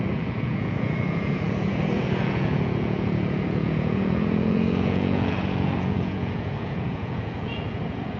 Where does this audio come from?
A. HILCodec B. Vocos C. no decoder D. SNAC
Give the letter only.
B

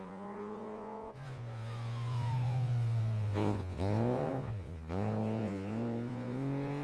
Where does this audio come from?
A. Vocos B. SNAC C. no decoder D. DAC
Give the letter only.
A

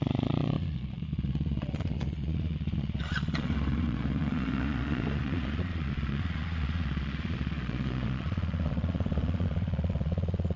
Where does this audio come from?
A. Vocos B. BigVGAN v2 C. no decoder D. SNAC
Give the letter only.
A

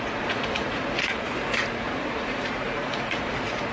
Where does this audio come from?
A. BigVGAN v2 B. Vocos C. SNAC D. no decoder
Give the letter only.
B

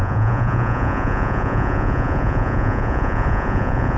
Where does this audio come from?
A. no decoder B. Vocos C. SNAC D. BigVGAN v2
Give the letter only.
B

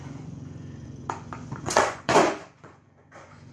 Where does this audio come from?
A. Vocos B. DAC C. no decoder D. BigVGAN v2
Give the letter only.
A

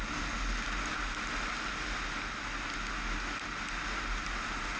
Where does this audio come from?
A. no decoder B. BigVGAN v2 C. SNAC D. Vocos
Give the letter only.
A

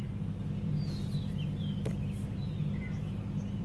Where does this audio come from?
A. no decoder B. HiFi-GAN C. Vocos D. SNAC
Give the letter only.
A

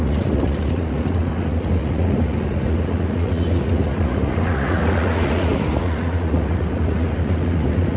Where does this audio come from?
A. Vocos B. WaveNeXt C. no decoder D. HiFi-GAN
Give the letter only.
A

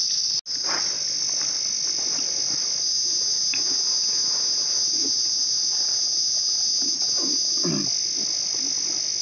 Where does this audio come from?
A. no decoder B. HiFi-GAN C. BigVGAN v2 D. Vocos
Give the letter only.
A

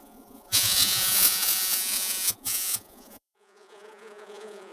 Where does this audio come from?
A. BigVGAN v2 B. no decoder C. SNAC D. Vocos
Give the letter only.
D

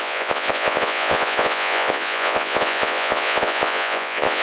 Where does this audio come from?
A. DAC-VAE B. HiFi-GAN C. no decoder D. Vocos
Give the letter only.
D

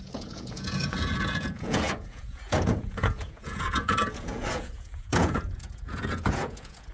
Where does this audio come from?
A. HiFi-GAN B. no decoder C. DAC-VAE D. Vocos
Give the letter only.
D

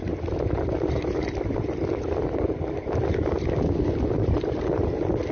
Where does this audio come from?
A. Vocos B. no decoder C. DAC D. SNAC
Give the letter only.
B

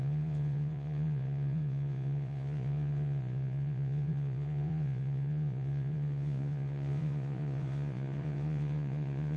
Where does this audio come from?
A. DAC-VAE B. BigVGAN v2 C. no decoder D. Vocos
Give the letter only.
D